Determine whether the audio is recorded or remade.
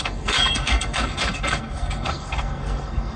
remade